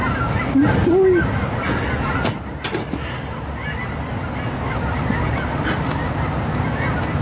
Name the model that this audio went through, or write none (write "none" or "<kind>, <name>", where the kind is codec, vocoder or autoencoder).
none